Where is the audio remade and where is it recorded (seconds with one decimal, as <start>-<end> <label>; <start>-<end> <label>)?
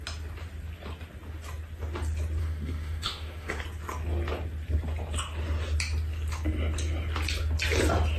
0.0-2.4 recorded; 2.4-3.6 remade; 3.6-8.2 recorded